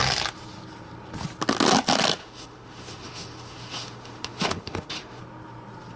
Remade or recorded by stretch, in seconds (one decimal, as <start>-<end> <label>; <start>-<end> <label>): 0.0-2.2 recorded; 2.2-5.2 remade; 5.2-6.0 recorded